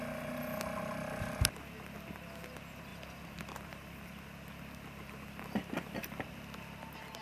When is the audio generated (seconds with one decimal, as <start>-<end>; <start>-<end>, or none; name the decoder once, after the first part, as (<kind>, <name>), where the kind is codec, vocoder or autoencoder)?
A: none